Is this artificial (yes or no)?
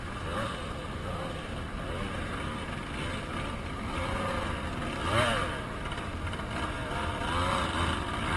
no